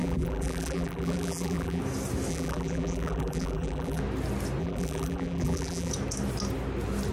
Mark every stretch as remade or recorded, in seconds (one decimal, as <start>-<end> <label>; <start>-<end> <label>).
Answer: 0.0-1.8 remade; 1.8-2.3 recorded; 2.3-4.0 remade; 4.0-4.6 recorded; 4.6-5.9 remade; 5.9-7.1 recorded